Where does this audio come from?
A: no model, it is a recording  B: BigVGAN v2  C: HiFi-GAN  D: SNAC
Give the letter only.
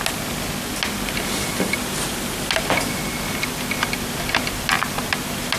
A